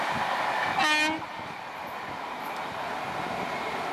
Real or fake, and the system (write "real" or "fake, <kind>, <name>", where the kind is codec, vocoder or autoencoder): real